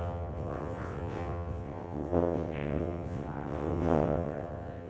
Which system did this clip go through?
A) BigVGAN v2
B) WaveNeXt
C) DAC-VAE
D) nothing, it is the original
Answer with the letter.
B